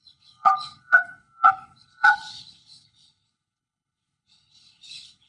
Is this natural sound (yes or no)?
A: no